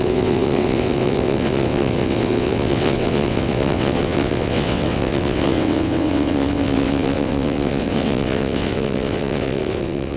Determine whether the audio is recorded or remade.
remade